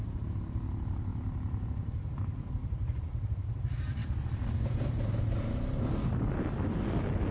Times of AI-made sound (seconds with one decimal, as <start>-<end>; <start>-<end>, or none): none